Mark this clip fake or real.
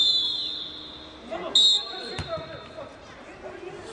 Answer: real